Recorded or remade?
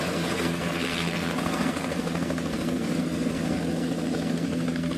remade